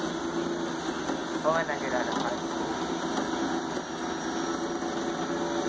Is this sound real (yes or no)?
yes